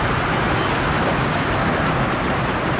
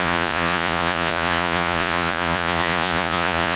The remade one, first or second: second